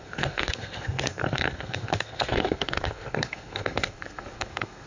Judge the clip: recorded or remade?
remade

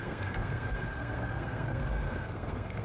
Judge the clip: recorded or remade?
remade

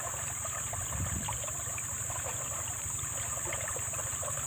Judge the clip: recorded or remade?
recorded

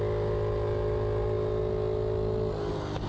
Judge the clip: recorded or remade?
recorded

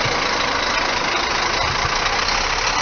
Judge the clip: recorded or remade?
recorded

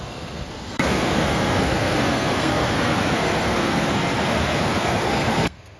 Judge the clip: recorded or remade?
remade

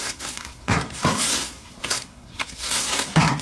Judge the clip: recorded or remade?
remade